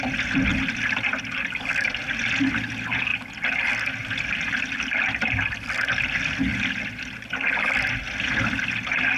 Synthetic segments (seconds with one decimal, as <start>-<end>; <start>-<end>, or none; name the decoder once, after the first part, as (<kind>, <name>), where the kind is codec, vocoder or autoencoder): none